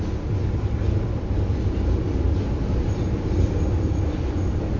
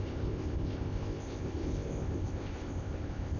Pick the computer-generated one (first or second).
second